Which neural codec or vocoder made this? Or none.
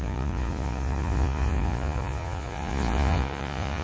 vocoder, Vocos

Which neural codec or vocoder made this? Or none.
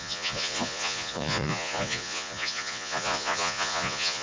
vocoder, Vocos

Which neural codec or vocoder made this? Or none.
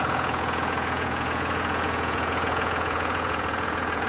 vocoder, Vocos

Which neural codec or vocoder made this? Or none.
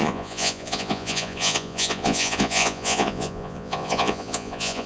vocoder, Vocos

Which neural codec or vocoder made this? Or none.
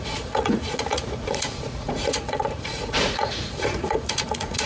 vocoder, Vocos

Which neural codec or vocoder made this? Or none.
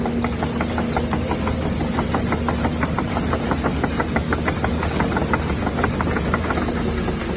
none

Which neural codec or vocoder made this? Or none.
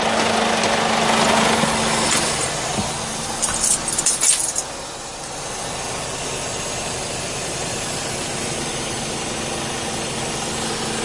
none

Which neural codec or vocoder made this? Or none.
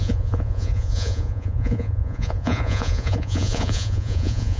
vocoder, Vocos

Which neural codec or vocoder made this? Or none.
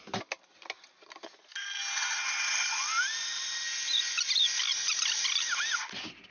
none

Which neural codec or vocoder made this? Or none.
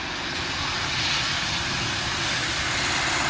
none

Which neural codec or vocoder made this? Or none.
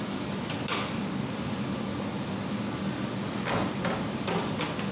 none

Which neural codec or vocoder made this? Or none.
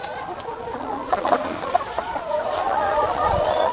vocoder, Vocos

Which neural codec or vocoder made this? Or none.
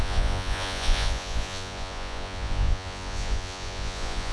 vocoder, Vocos